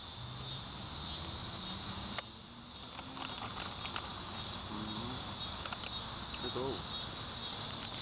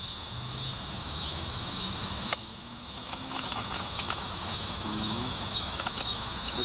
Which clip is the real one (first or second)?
first